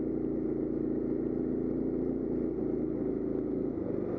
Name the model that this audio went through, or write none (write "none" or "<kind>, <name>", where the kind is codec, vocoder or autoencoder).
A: none